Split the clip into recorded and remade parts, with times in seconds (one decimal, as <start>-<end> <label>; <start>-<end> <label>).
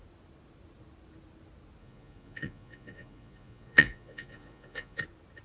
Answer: 0.0-1.8 recorded; 1.8-5.0 remade; 5.0-5.4 recorded